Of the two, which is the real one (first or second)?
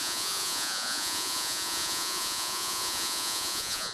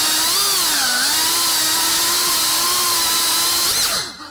second